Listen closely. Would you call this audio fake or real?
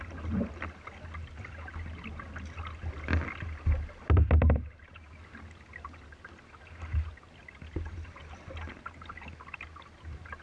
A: real